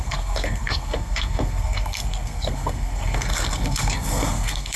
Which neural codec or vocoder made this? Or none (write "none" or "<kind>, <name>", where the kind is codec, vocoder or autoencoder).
codec, SNAC